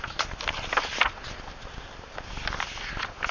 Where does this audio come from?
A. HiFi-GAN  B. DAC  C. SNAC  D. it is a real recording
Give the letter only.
D